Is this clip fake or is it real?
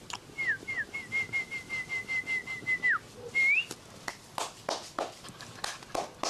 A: real